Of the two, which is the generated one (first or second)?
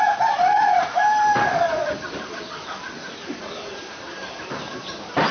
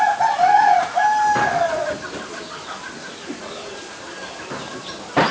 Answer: first